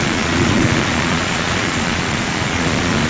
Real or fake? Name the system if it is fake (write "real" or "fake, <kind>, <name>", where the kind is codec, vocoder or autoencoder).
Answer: fake, vocoder, Vocos